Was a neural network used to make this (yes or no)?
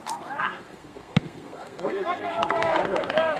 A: yes